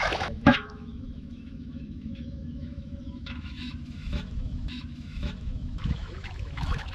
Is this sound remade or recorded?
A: remade